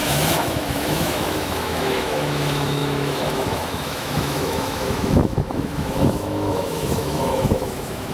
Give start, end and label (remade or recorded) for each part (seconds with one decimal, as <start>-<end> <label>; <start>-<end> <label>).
0.0-8.1 remade